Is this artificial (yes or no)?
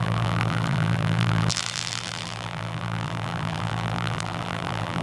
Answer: yes